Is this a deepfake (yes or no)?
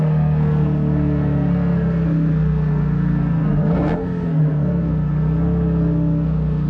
yes